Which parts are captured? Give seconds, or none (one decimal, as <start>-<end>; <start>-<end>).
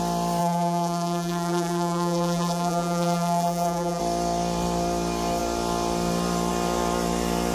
0.0-0.4; 4.0-7.5